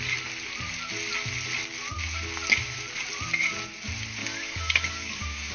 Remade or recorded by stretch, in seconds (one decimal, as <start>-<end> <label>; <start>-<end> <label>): 0.0-4.2 recorded; 4.2-5.5 remade